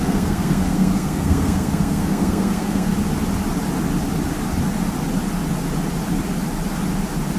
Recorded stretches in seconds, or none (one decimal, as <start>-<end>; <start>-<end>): 2.9-7.4